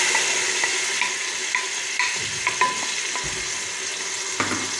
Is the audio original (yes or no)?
yes